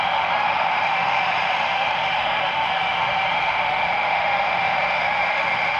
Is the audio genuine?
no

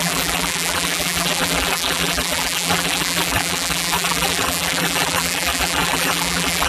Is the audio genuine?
no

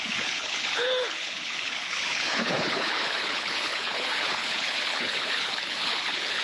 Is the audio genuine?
no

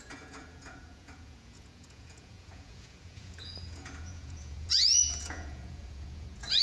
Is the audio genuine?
no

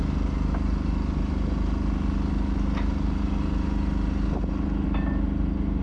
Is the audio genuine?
yes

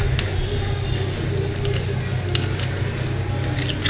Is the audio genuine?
yes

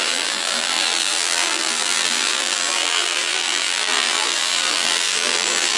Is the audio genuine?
no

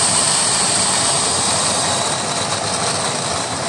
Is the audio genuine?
yes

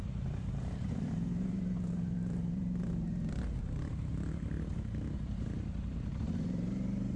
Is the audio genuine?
no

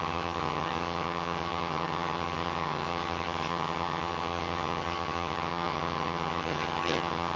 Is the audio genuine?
no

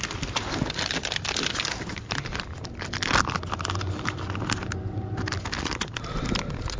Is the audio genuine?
yes